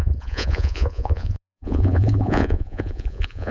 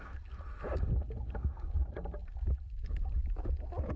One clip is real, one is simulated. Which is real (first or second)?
second